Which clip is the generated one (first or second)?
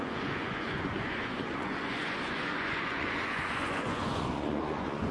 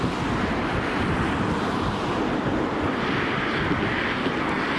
first